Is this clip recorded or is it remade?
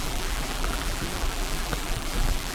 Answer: remade